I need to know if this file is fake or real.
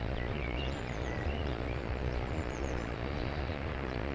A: fake